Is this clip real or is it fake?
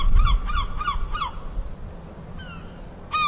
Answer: real